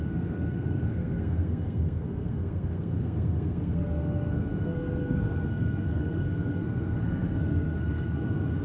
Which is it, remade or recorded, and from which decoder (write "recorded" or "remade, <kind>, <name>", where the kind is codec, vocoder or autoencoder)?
remade, codec, SNAC